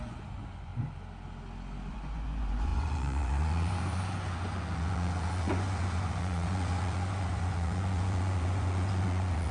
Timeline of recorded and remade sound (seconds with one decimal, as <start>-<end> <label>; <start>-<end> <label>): 0.0-0.7 remade; 0.7-1.9 recorded; 1.9-9.5 remade